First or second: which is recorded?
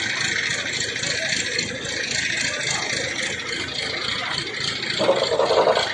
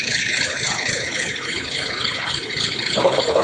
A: first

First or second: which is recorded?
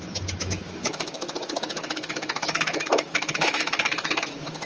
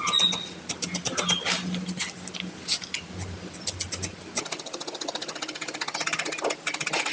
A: second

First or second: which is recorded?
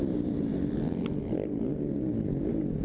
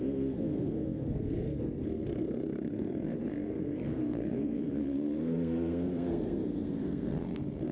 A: first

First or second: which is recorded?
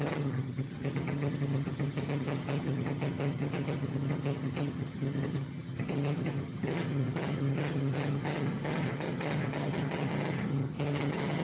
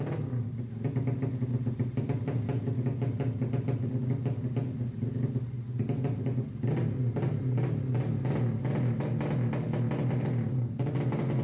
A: second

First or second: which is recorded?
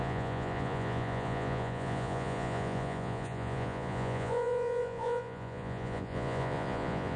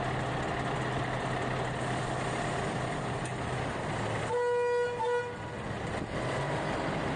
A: second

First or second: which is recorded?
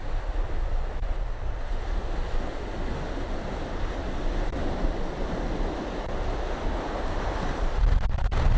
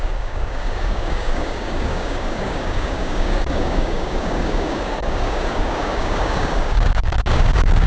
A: first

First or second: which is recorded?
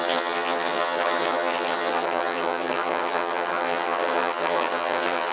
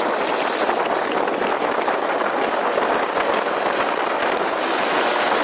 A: second